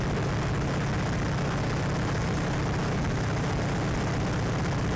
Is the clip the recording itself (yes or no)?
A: yes